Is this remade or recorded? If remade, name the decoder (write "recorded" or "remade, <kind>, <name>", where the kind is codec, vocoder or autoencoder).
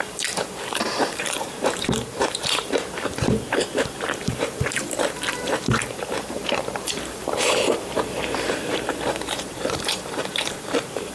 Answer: remade, vocoder, BigVGAN v2